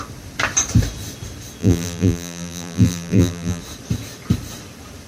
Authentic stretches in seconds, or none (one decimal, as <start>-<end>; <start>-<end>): 0.0-1.6; 3.6-5.1